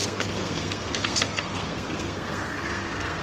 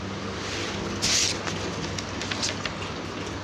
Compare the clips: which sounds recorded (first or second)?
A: second